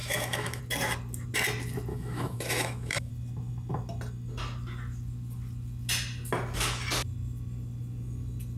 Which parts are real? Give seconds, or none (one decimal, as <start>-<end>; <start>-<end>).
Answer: 0.6-1.9; 3.1-8.6

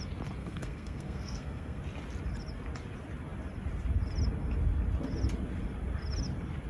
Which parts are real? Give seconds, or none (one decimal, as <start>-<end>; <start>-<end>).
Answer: 0.0-0.4; 1.8-6.7

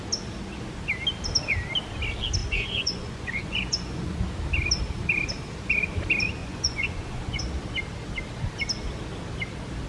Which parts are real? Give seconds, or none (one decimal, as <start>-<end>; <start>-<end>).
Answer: 0.0-2.4; 4.2-6.4; 7.4-9.9